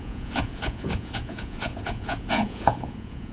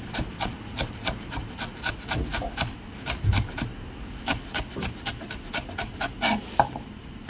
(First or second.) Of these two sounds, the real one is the second